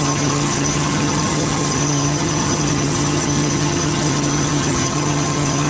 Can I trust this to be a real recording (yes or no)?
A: no